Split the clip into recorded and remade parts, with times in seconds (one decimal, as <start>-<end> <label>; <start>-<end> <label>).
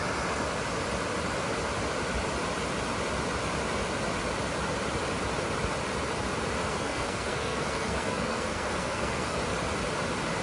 0.0-6.6 recorded; 6.6-9.4 remade; 9.4-10.4 recorded